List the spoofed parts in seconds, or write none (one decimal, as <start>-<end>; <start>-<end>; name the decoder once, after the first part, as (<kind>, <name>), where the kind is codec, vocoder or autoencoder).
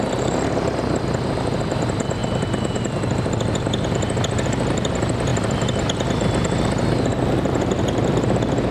0.0-8.7 (vocoder, BigVGAN v2)